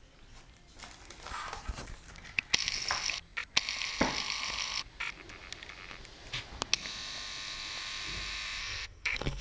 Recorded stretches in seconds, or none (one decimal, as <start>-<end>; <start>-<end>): 0.0-8.6